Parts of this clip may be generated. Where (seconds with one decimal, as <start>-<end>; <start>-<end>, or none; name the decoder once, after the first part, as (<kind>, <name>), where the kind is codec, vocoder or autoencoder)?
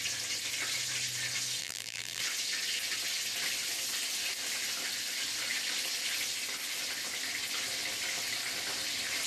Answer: 1.6-2.2 (vocoder, BigVGAN v2)